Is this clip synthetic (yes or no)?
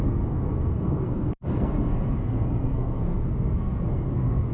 yes